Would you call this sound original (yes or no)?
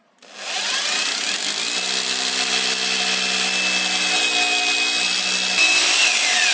yes